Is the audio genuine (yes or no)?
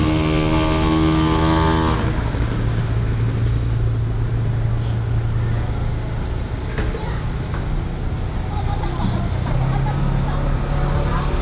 yes